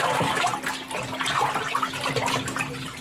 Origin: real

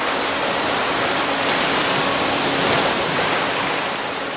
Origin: real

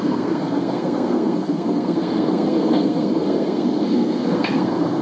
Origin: fake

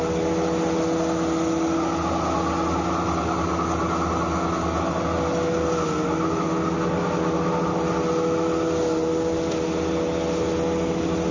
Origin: real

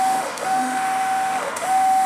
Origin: fake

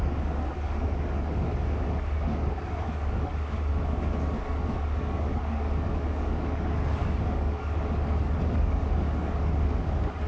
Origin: fake